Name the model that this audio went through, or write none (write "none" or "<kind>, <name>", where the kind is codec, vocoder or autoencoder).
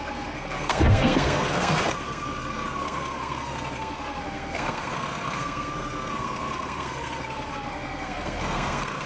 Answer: codec, SNAC